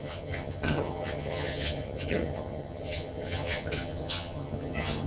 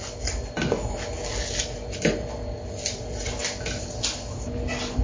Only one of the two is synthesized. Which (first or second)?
first